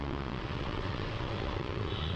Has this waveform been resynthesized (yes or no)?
yes